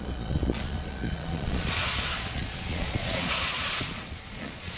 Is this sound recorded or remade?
remade